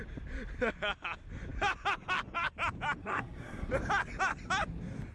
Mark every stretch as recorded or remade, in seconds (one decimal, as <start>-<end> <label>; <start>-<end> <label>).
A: 0.0-3.0 recorded; 3.0-3.7 remade; 3.7-5.1 recorded